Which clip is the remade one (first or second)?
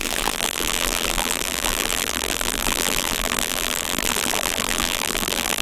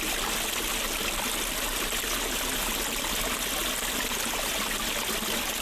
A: first